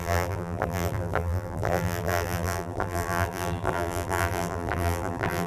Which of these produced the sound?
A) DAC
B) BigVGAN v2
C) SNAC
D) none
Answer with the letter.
B